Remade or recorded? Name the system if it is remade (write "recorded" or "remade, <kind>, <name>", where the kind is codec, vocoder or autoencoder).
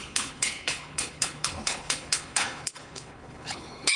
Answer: remade, codec, HILCodec